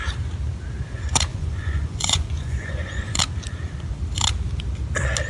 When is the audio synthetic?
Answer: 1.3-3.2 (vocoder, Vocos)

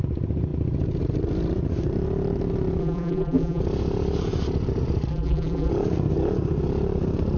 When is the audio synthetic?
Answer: 2.8-3.6 (vocoder, BigVGAN v2); 5.1-5.7

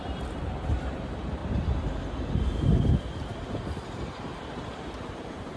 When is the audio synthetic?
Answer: 0.0-1.4 (vocoder, BigVGAN v2); 4.8-5.6

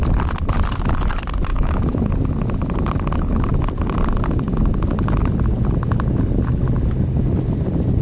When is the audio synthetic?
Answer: 1.5-2.1 (autoencoder, DAC-VAE)

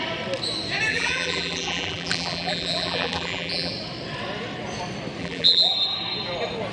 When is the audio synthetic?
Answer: 0.9-3.7 (vocoder, BigVGAN v2); 5.2-5.7

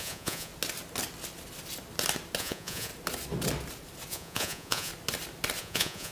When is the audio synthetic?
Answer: 0.0-0.5 (vocoder, Vocos); 2.4-2.9; 4.1-4.9; 5.6-6.1

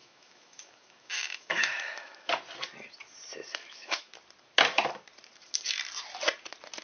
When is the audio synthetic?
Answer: 0.0-2.3 (autoencoder, DAC-VAE); 3.5-4.1